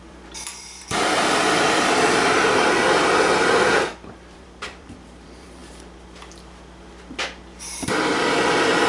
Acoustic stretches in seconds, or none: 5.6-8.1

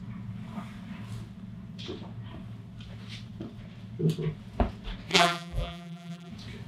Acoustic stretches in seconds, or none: 0.0-5.1; 6.3-6.7

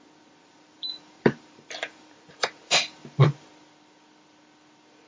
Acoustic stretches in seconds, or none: 0.0-0.4; 3.5-5.1